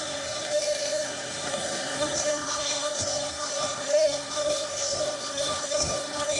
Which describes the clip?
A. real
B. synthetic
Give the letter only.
B